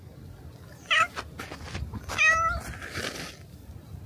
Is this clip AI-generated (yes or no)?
no